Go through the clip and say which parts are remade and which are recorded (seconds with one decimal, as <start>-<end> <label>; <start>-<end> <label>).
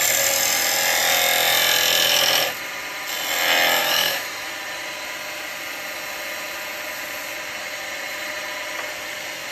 0.0-3.8 recorded; 3.8-4.5 remade; 4.5-9.5 recorded